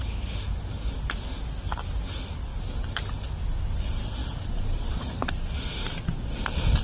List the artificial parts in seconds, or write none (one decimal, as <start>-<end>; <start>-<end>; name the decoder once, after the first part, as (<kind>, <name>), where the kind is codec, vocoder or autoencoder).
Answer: 2.5-3.3 (vocoder, BigVGAN v2); 4.2-5.3

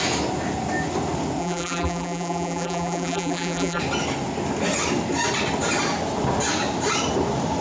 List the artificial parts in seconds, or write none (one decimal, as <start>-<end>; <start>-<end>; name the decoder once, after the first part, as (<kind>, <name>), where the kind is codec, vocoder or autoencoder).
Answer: 1.4-3.8 (vocoder, BigVGAN v2)